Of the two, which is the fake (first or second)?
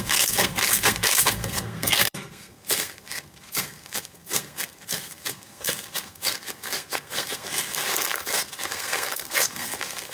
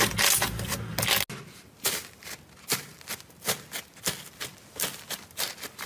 first